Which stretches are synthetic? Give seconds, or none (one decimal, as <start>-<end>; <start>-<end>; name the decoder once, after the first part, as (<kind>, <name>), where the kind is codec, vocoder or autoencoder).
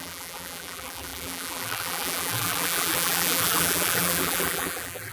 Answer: 0.0-5.1 (vocoder, BigVGAN v2)